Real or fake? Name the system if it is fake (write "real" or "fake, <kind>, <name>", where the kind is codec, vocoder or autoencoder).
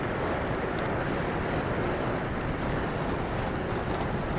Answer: real